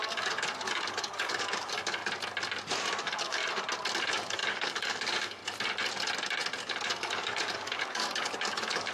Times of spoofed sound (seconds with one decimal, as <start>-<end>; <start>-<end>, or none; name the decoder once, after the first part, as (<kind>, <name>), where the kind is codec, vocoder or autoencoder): 0.0-2.0 (codec, DAC); 3.0-3.4; 4.0-5.4; 7.0-8.9